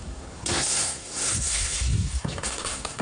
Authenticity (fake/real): fake